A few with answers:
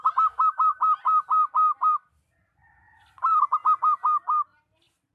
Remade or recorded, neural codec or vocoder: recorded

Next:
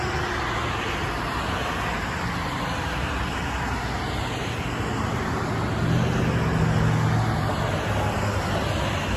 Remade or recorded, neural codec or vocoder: recorded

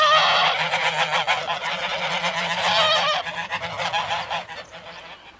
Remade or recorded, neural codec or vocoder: recorded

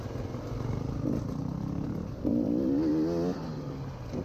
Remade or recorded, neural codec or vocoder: recorded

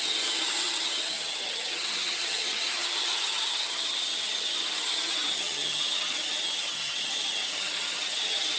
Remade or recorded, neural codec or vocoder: remade, vocoder, HiFi-GAN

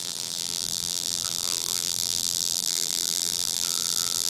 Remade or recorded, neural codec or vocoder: remade, vocoder, BigVGAN v2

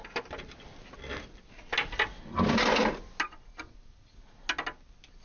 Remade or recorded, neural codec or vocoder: recorded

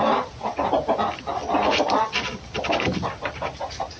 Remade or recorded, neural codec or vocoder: recorded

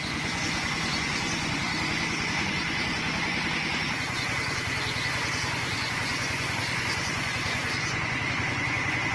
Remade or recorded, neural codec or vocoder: remade, vocoder, Vocos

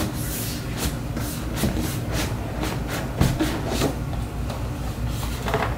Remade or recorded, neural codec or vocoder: recorded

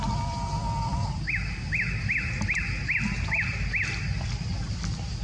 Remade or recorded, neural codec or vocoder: recorded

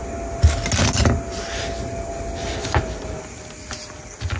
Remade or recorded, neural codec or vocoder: recorded